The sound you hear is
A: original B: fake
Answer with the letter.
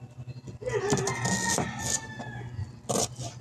A